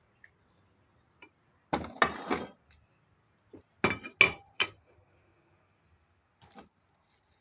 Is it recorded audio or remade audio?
recorded